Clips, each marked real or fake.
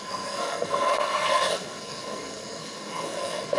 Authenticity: fake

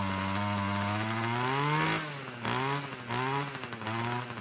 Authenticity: real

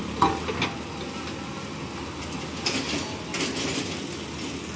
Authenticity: real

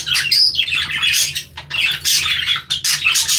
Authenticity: real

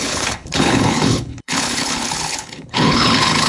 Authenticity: fake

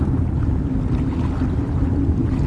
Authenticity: real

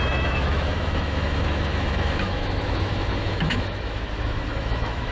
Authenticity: fake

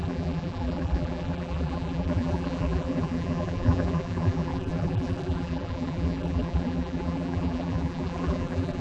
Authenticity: fake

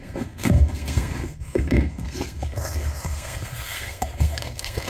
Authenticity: fake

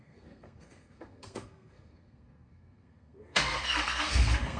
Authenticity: fake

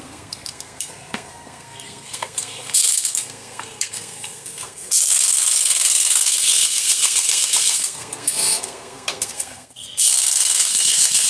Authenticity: fake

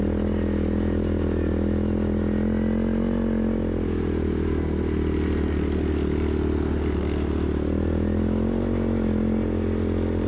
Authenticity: real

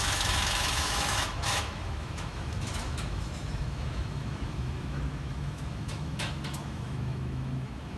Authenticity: fake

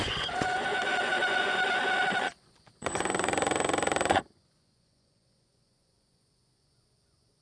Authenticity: fake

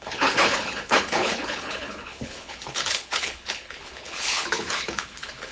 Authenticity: fake